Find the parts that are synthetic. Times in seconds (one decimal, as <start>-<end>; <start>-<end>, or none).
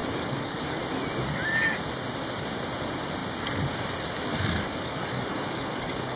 0.0-0.8; 4.3-6.2